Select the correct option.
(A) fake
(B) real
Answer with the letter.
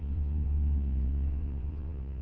A